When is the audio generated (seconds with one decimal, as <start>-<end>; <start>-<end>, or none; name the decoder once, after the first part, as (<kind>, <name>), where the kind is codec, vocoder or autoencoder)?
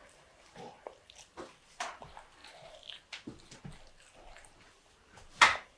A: none